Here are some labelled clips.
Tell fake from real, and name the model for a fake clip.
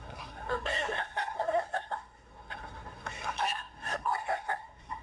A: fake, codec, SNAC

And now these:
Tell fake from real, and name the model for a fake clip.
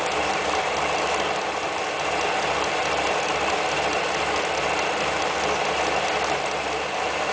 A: real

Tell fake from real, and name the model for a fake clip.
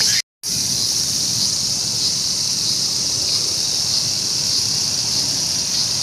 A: real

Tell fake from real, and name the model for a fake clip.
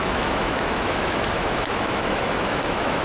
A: fake, autoencoder, DAC-VAE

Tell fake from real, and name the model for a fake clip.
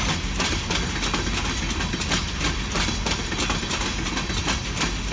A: real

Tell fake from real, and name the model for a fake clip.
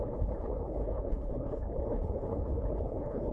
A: fake, codec, HILCodec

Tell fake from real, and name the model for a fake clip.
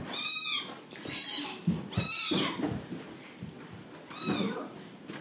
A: real